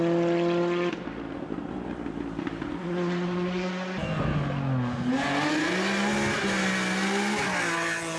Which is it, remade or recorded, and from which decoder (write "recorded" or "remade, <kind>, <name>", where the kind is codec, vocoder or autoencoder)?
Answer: recorded